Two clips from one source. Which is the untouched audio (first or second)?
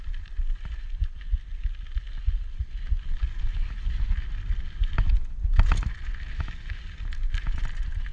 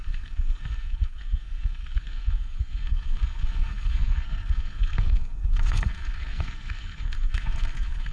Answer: first